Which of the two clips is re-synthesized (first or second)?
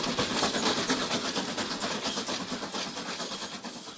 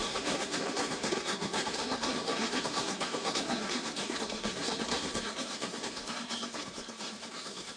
second